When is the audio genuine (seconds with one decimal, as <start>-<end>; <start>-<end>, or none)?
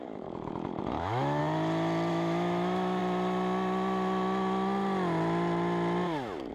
1.4-2.1; 3.0-6.5